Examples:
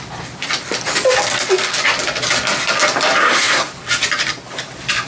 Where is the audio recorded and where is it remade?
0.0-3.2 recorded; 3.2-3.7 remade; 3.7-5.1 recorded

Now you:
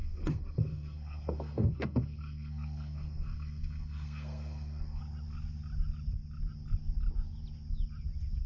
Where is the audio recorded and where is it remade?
0.0-5.0 remade; 5.0-8.5 recorded

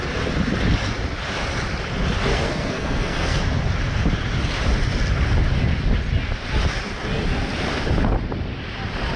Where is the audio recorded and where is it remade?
0.0-2.3 recorded; 2.3-3.4 remade; 3.4-9.2 recorded

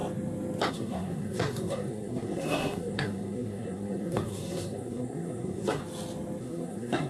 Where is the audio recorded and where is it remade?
0.0-0.7 recorded; 0.7-5.8 remade; 5.8-6.4 recorded; 6.4-7.1 remade

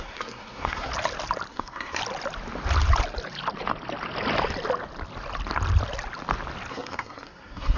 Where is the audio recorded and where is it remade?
0.0-0.9 remade; 0.9-1.5 recorded; 1.5-2.0 remade; 2.0-6.7 recorded; 6.7-7.8 remade

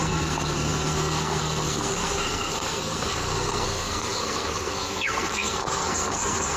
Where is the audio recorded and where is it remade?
0.0-6.6 remade

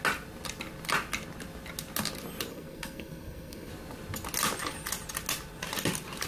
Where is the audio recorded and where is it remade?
0.0-2.5 recorded; 2.5-3.7 remade; 3.7-6.3 recorded

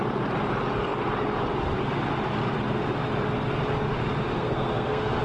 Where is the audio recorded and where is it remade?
0.0-4.3 recorded; 4.3-5.2 remade